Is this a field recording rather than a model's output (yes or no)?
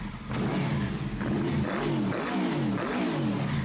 yes